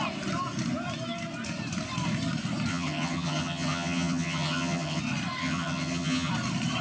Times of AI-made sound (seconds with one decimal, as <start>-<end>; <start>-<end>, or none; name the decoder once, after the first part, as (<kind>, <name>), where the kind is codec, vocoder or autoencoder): 2.7-5.0 (vocoder, HiFi-GAN); 5.4-6.3